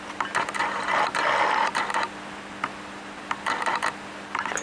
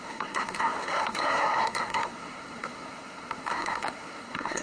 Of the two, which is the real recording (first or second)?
first